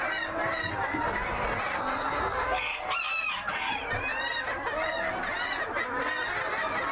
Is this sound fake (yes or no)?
no